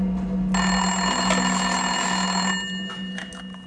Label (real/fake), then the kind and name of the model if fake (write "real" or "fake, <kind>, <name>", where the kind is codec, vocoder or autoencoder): real